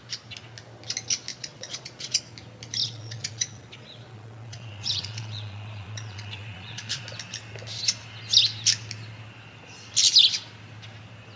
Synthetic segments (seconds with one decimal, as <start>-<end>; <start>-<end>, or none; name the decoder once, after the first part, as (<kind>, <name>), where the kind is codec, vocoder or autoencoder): 1.3-2.2 (vocoder, Vocos); 2.8-7.0